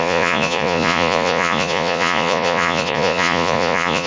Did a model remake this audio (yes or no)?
yes